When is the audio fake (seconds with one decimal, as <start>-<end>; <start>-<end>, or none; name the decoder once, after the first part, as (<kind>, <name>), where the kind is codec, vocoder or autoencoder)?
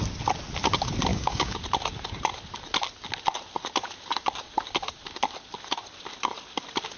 1.1-1.6 (codec, DAC)